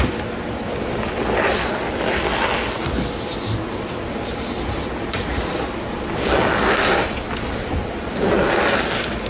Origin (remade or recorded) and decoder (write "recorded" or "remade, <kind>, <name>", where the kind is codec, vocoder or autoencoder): recorded